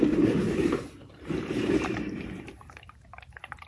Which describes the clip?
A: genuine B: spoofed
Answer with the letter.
B